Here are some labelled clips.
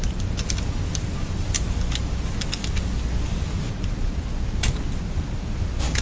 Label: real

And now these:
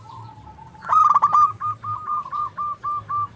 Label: fake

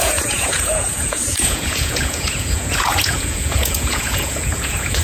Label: fake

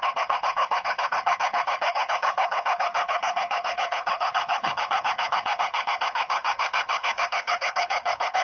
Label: fake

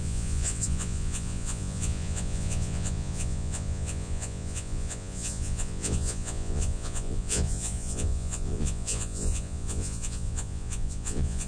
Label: fake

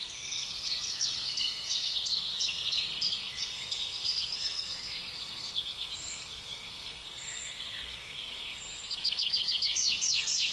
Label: fake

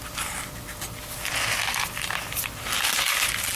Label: real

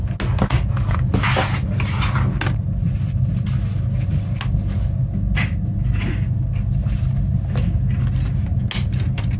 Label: real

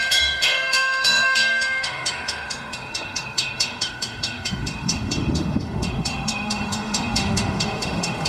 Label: fake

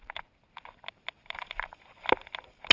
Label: real